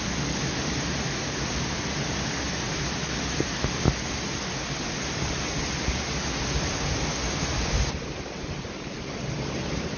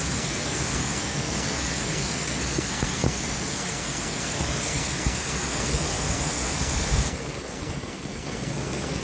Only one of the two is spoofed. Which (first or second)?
second